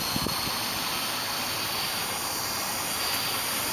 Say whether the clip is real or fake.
fake